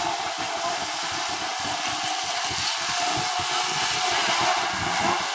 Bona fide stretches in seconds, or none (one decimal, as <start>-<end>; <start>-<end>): 0.0-5.3